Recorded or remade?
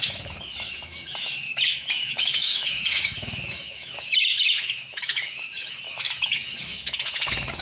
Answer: remade